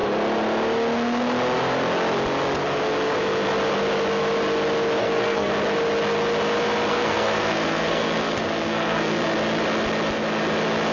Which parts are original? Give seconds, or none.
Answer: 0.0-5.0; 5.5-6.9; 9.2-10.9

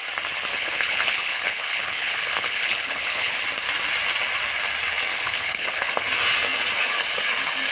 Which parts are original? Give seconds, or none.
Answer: 0.0-0.5; 3.3-5.1; 5.9-7.7